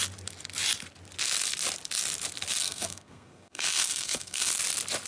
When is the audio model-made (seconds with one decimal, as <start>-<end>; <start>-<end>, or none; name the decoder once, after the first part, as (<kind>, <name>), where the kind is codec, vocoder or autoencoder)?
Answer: 2.6-4.5 (codec, SNAC)